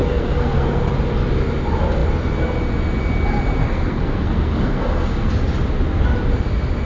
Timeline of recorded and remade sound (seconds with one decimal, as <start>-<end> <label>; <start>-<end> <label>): 0.0-0.9 remade; 0.9-3.6 recorded; 3.6-5.3 remade; 5.3-6.9 recorded